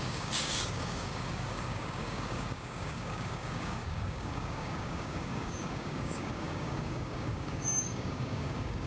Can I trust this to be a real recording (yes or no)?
no